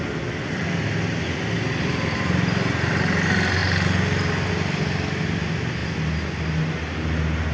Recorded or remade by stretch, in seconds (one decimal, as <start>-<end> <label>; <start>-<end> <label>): 0.0-7.5 recorded